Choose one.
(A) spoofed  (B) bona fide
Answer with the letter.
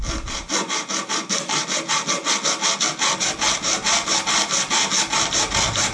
B